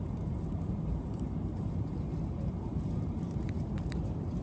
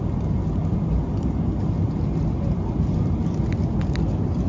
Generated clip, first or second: first